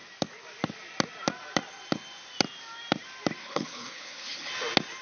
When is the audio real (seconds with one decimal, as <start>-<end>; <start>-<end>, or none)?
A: 0.0-3.4; 4.5-5.0